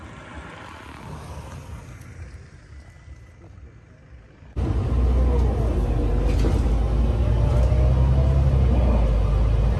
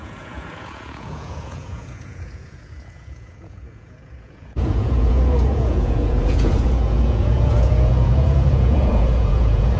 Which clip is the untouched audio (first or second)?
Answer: first